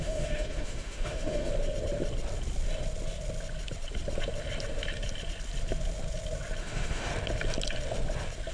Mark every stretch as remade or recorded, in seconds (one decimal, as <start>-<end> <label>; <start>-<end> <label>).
0.0-1.5 remade; 1.5-6.6 recorded; 6.6-7.1 remade; 7.1-8.5 recorded